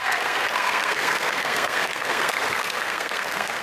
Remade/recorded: remade